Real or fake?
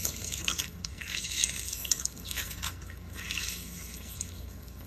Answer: fake